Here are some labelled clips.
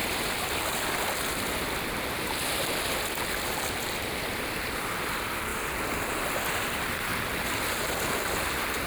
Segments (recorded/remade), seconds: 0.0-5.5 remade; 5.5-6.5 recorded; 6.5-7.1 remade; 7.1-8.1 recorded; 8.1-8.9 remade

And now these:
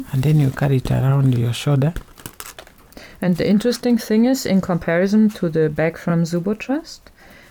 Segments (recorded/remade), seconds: 0.0-3.1 recorded; 3.1-4.0 remade; 4.0-7.5 recorded

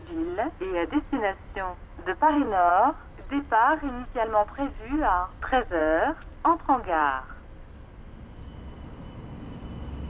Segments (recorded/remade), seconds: 0.0-1.1 remade; 1.1-1.9 recorded; 1.9-2.7 remade; 2.7-5.8 recorded; 5.8-7.9 remade; 7.9-10.1 recorded

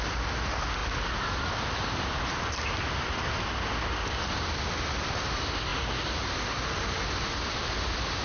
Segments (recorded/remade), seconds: 0.0-5.7 recorded; 5.7-8.2 remade

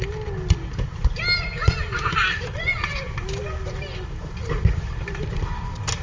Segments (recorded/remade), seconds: 0.0-1.6 recorded; 1.6-5.2 remade; 5.2-6.0 recorded

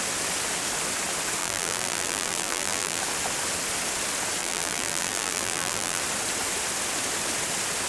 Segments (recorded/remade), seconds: 0.0-1.4 recorded; 1.4-3.0 remade; 3.0-4.4 recorded; 4.4-6.0 remade; 6.0-7.9 recorded

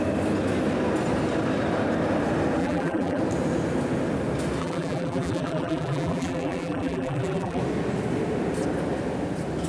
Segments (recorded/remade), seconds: 0.0-2.6 recorded; 2.6-3.2 remade; 3.2-4.6 recorded; 4.6-7.6 remade; 7.6-9.7 recorded

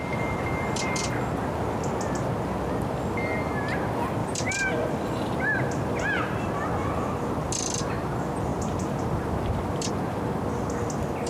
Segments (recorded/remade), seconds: 0.0-4.2 recorded; 4.2-6.5 remade; 6.5-8.5 recorded; 8.5-9.9 remade; 9.9-11.3 recorded